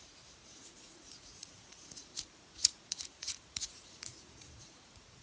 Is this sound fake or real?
fake